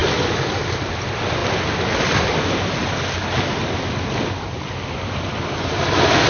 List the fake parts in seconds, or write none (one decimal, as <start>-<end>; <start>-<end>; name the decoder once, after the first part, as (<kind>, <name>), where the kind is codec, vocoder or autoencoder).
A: none